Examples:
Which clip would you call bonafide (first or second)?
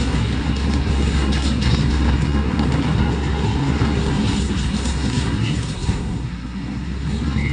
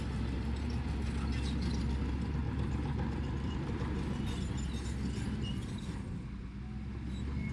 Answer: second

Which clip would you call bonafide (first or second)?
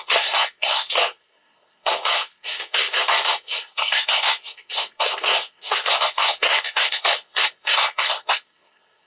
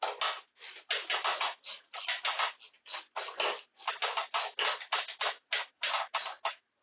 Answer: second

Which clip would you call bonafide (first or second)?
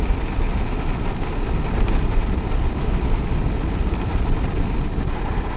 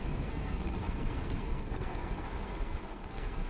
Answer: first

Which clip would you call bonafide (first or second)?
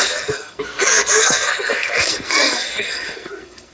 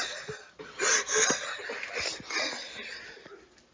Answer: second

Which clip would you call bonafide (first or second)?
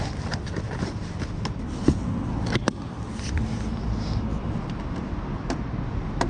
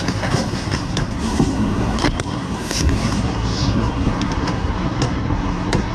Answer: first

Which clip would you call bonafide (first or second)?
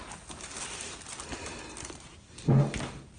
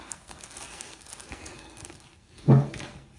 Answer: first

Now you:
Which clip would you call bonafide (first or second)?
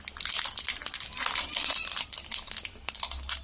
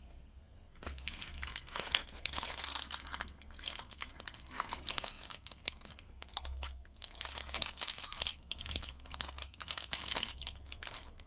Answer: first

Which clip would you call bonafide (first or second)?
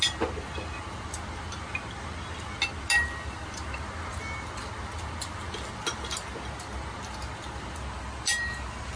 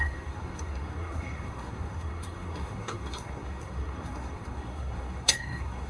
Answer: first